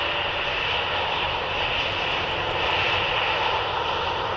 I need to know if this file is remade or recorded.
recorded